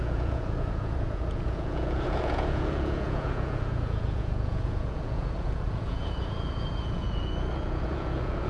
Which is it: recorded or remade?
remade